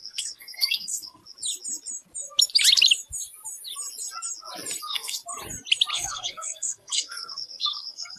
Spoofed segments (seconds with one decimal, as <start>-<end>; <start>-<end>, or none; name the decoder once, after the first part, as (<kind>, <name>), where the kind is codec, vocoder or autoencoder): 0.0-1.2 (codec, SNAC); 4.8-5.2; 5.9-8.2